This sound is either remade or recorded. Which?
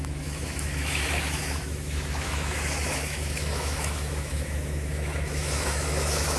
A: remade